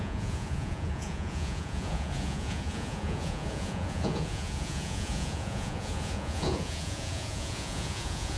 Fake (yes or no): yes